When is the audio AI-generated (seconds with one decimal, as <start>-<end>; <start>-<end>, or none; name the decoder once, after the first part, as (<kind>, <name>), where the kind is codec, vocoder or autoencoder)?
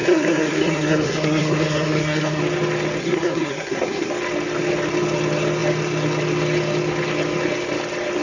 0.0-2.4 (codec, SNAC); 3.0-4.1